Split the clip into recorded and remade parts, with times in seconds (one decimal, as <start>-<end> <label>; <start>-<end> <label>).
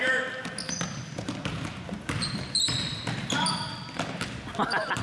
0.0-5.0 recorded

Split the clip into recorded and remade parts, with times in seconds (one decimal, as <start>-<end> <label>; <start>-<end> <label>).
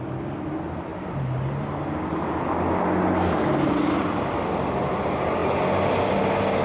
0.0-6.6 recorded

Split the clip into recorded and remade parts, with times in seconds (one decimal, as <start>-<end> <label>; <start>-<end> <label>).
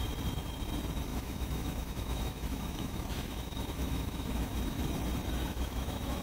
0.0-1.1 recorded; 1.1-4.8 remade; 4.8-5.4 recorded; 5.4-6.2 remade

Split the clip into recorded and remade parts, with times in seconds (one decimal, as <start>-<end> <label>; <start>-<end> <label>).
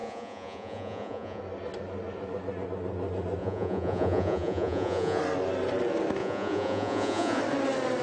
0.0-1.4 remade; 1.4-3.4 recorded; 3.4-5.2 remade; 5.2-6.2 recorded; 6.2-7.4 remade; 7.4-8.0 recorded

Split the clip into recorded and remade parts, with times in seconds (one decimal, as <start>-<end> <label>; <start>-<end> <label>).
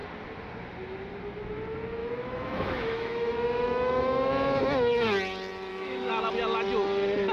0.0-2.0 recorded; 2.0-4.3 remade; 4.3-5.7 recorded; 5.7-6.3 remade; 6.3-7.3 recorded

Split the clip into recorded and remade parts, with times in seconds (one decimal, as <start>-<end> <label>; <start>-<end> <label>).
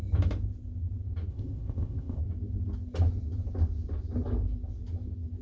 0.0-1.3 recorded; 1.3-2.2 remade; 2.2-5.4 recorded